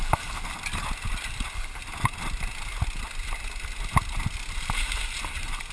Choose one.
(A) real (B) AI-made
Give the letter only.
A